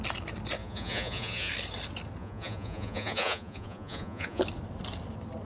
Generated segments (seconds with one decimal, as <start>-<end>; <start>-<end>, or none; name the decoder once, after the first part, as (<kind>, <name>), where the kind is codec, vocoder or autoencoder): 0.6-1.5 (vocoder, Vocos); 2.2-4.4